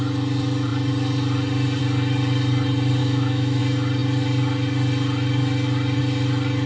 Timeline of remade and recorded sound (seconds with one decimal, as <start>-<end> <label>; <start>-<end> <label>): 0.0-3.0 recorded; 3.0-3.6 remade; 3.6-6.7 recorded